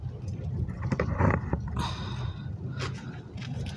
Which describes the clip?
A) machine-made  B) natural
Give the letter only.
A